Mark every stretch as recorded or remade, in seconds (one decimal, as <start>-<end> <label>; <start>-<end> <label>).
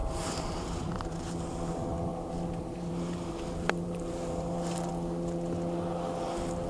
0.0-1.2 remade; 1.2-2.1 recorded; 2.1-4.9 remade; 4.9-6.7 recorded